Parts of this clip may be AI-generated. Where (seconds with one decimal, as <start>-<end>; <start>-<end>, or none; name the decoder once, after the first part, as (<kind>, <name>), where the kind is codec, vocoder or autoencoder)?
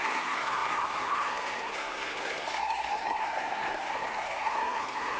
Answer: 0.0-5.2 (codec, SNAC)